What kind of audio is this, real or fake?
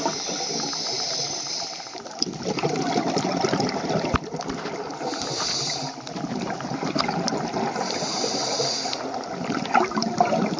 fake